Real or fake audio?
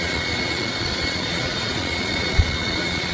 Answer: fake